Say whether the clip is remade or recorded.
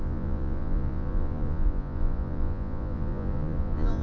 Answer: remade